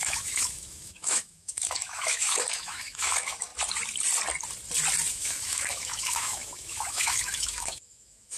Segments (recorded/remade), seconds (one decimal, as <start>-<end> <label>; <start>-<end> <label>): 0.0-3.5 remade; 3.5-5.1 recorded; 5.1-8.4 remade